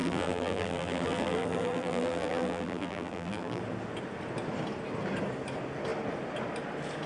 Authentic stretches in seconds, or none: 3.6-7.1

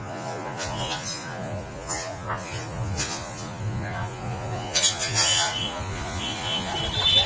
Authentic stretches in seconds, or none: 6.7-7.3

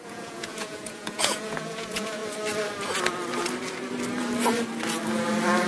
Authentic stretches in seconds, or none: 2.2-5.7